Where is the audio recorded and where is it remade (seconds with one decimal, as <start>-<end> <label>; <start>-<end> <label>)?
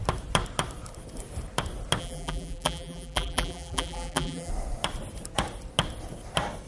0.0-2.0 recorded; 2.0-4.5 remade; 4.5-6.7 recorded